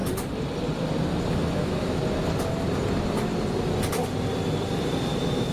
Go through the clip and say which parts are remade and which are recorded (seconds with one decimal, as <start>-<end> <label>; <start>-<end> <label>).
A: 0.0-1.3 recorded; 1.3-2.0 remade; 2.0-5.5 recorded